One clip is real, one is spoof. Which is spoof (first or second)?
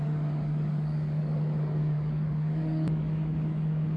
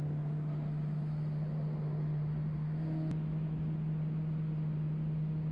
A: first